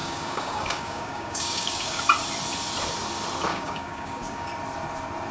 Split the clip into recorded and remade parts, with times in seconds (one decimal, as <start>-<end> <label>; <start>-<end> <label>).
0.0-2.0 remade; 2.0-3.5 recorded; 3.5-4.5 remade; 4.5-5.3 recorded